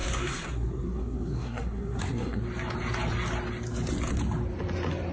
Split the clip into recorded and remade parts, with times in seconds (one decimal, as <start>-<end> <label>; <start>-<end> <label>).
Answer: 0.0-2.4 remade; 2.4-5.1 recorded